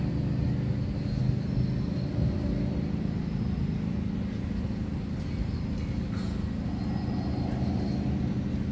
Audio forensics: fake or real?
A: real